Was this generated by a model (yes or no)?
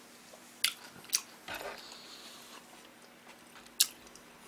no